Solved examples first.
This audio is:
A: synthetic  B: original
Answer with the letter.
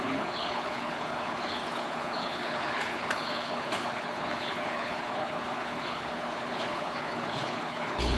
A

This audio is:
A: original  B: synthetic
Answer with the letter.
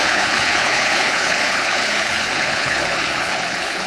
B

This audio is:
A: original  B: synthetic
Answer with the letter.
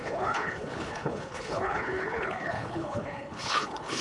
B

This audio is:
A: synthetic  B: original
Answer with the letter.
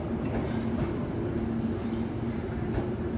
B